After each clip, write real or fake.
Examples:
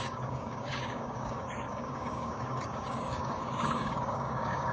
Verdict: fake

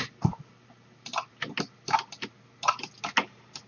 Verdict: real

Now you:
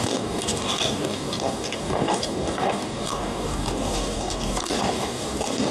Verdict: fake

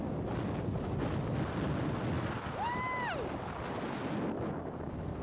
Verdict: real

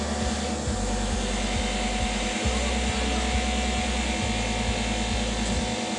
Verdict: real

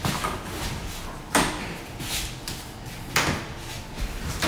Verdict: real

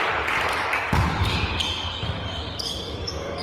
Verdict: fake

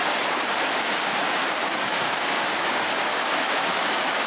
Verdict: fake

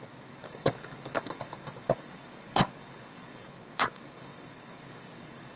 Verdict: fake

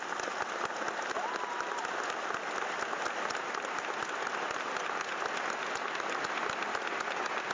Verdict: real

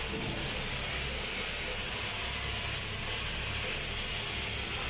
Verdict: real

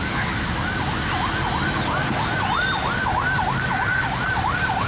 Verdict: real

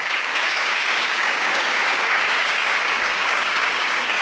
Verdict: fake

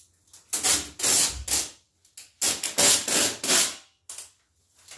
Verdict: real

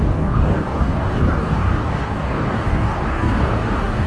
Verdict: fake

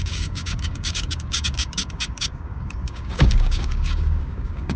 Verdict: fake